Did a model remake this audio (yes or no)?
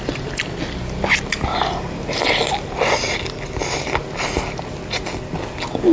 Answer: no